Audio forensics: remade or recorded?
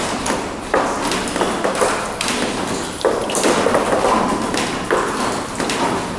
recorded